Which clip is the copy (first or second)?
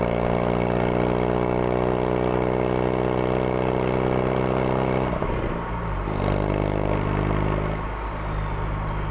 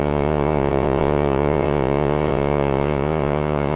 second